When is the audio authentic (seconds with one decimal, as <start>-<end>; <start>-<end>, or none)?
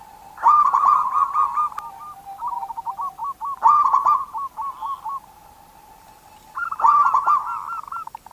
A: 0.0-8.3